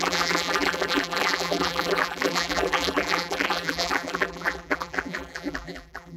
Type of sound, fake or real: fake